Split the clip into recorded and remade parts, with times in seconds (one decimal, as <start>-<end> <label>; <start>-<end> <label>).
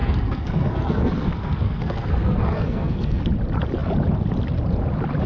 0.0-3.2 remade; 3.2-5.3 recorded